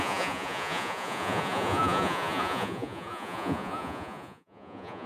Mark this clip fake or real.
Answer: fake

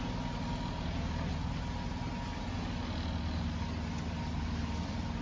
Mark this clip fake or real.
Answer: real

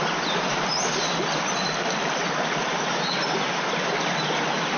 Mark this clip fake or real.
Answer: real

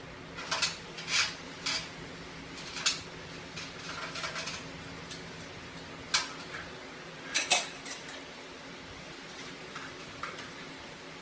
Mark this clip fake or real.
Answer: real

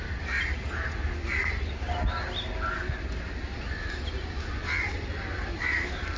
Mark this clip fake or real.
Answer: real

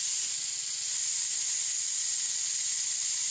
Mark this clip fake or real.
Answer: real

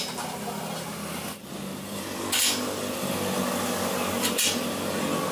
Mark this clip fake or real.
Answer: real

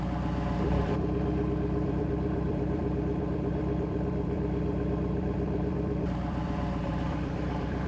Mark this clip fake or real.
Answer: fake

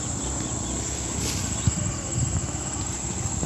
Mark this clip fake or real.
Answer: real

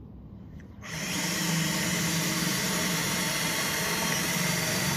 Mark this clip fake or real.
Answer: fake